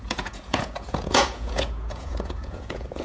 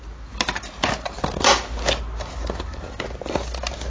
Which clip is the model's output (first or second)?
first